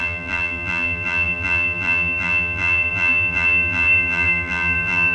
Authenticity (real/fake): fake